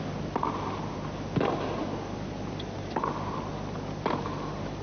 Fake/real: real